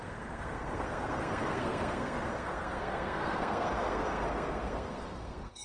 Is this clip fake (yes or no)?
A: yes